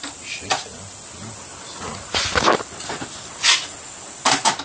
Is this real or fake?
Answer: real